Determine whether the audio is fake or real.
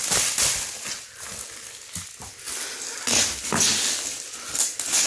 real